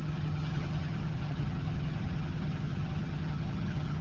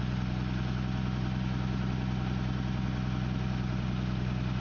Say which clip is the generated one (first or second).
first